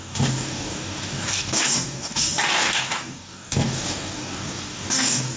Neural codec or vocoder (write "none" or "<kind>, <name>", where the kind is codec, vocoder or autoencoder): codec, DAC